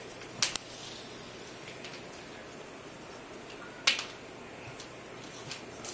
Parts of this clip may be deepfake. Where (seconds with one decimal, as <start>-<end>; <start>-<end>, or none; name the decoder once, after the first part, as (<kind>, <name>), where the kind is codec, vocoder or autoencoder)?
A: none